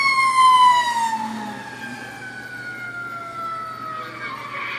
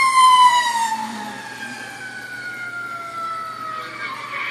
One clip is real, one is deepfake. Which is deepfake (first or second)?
second